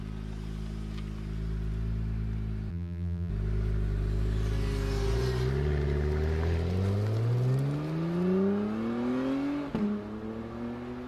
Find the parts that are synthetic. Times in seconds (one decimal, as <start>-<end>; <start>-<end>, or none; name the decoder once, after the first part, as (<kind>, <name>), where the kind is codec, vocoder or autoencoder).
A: 2.7-3.3 (vocoder, BigVGAN v2)